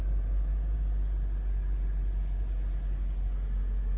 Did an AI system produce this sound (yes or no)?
no